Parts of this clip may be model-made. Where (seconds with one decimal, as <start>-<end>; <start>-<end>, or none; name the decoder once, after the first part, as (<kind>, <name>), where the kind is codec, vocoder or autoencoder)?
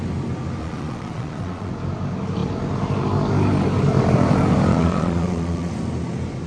0.6-1.7 (vocoder, Vocos); 4.7-5.7